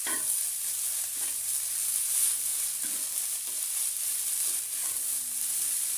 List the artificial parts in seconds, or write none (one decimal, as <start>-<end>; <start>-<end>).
2.5-3.6; 4.8-6.0